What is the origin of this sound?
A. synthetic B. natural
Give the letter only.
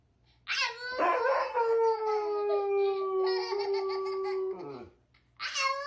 B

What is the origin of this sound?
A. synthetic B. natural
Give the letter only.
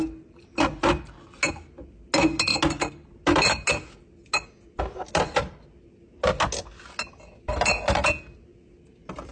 B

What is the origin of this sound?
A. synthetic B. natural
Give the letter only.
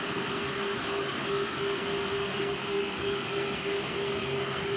A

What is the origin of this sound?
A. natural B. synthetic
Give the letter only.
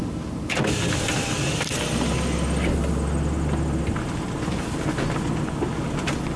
A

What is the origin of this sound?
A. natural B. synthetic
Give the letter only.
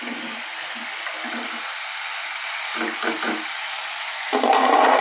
A